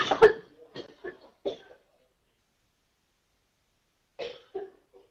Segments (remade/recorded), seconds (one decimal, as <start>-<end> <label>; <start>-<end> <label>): 0.0-5.1 recorded